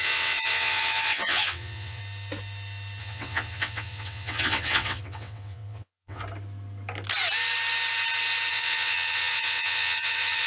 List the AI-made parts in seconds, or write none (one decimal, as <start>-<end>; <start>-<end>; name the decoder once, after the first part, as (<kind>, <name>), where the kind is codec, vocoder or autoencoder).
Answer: 0.0-2.0 (vocoder, WaveNeXt); 3.0-6.2; 8.5-10.5